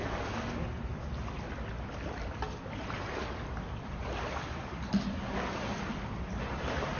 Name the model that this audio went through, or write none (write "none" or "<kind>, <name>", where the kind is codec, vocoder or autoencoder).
none